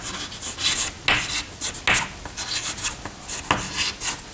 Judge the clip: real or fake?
real